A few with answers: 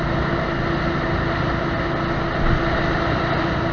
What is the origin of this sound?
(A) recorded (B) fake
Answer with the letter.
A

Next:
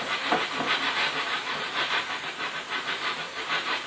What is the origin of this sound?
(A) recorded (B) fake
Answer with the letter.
B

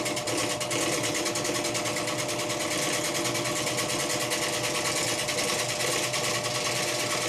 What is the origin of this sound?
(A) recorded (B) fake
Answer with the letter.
A